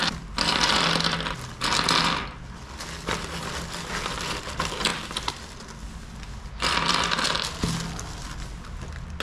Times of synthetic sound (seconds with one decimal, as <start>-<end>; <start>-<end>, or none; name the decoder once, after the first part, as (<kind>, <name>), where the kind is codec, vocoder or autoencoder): 4.9-5.6 (vocoder, BigVGAN v2)